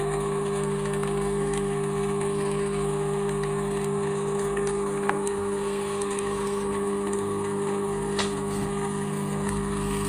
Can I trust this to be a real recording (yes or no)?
no